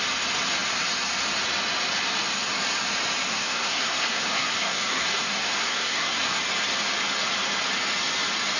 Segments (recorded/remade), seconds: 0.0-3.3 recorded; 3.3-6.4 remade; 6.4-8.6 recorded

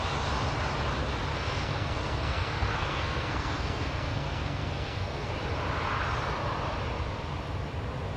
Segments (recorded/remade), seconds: 0.0-1.3 recorded; 1.3-5.3 remade; 5.3-8.2 recorded

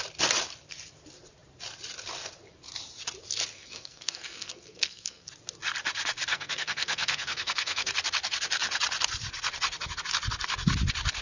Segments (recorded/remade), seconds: 0.0-3.5 recorded; 3.5-5.3 remade; 5.3-6.3 recorded; 6.3-7.9 remade; 7.9-11.2 recorded